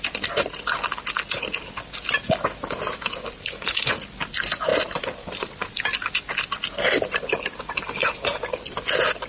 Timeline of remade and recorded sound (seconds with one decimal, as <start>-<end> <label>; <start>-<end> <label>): 0.0-4.7 recorded; 4.7-5.7 remade; 5.7-9.3 recorded